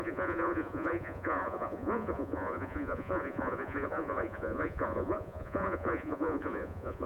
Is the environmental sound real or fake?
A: fake